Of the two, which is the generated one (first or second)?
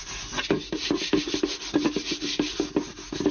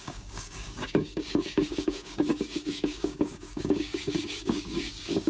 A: second